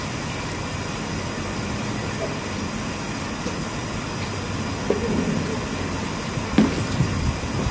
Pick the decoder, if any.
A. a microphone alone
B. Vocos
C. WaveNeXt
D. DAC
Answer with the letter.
A